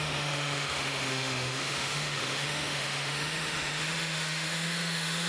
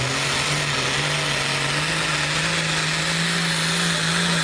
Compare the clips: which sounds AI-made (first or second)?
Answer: first